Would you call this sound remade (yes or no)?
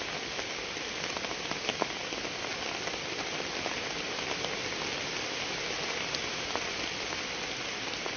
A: no